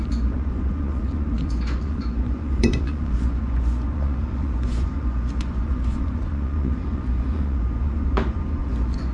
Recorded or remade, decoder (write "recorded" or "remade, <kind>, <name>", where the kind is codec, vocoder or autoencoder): remade, vocoder, Vocos